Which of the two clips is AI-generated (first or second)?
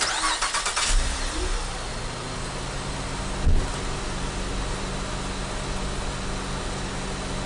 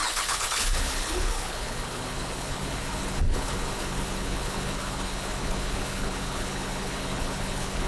second